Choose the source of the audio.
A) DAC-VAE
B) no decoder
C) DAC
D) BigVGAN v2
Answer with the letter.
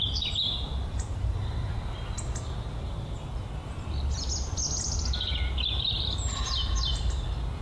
D